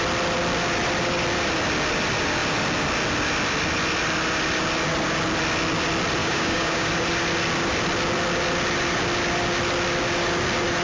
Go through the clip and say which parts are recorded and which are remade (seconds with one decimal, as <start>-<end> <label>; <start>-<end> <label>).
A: 0.0-6.2 recorded; 6.2-6.9 remade; 6.9-10.8 recorded